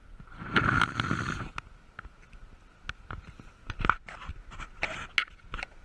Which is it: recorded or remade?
recorded